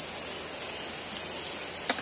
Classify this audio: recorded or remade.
recorded